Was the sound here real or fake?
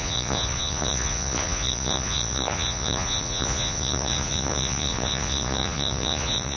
fake